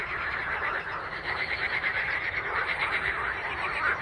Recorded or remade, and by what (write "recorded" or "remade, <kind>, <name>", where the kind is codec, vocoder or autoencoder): remade, vocoder, BigVGAN v2